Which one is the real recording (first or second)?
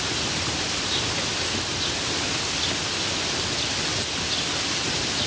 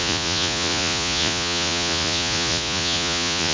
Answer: first